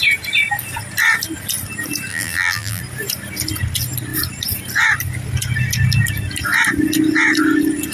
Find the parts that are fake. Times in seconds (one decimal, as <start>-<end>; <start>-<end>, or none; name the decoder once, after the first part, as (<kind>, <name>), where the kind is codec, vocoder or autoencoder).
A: 2.1-2.8 (vocoder, BigVGAN v2)